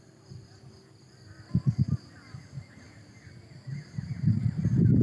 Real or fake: real